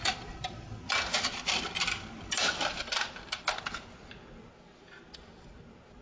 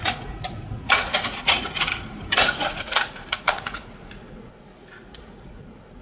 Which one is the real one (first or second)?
first